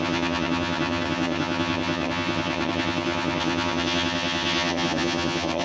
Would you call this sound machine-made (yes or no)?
yes